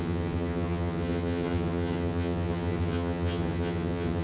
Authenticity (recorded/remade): remade